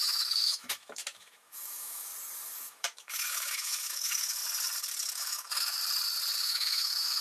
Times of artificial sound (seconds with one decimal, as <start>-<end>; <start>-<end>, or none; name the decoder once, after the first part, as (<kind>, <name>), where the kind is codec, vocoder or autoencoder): 0.0-2.1 (autoencoder, DAC-VAE); 2.6-4.4; 5.1-5.8; 6.4-7.2